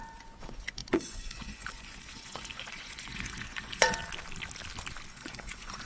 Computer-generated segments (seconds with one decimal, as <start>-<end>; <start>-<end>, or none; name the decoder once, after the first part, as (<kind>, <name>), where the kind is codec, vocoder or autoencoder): 0.0-4.0 (vocoder, Vocos); 5.1-5.9